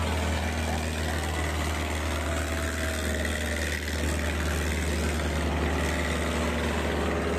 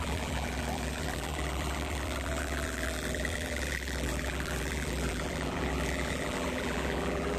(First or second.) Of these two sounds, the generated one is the second